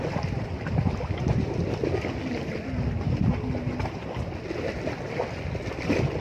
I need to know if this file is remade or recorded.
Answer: recorded